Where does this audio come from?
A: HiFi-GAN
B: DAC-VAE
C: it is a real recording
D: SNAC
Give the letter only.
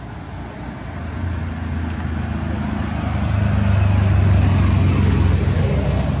C